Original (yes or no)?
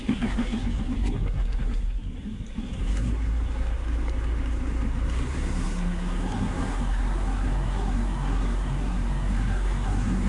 no